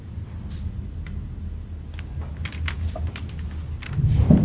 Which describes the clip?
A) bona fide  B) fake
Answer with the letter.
A